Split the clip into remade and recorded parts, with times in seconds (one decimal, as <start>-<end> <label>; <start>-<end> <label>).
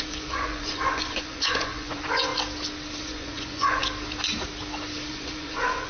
0.0-2.3 remade; 2.3-3.0 recorded; 3.0-3.8 remade; 3.8-5.1 recorded; 5.1-5.9 remade